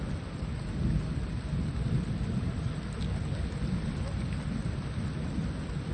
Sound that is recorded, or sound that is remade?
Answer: recorded